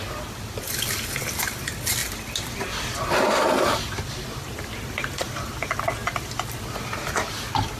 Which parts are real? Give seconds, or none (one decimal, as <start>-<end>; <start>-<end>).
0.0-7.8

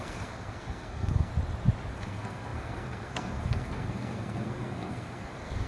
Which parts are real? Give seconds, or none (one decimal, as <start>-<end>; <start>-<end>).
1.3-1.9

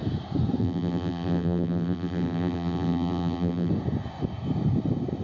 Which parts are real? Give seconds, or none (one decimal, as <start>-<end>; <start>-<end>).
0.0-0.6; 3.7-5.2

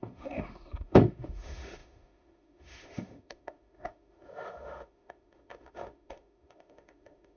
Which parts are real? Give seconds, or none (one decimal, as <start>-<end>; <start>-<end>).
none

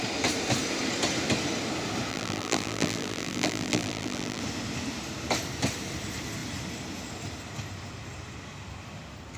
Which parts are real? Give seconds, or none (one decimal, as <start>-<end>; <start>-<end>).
0.0-2.1; 4.4-9.4

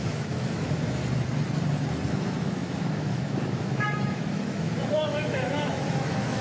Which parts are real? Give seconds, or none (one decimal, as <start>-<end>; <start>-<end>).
1.0-2.2

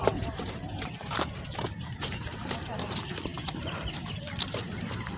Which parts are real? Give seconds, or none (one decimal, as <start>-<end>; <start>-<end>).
none

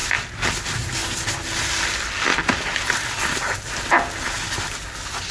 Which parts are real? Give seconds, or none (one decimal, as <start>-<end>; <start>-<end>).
0.0-5.3